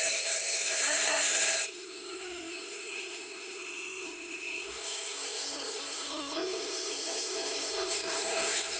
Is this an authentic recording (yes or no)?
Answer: no